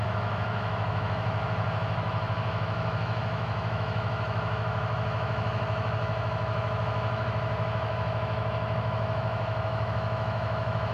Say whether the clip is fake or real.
fake